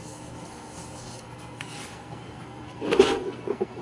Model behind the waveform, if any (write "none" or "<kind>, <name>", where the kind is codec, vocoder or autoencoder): codec, SNAC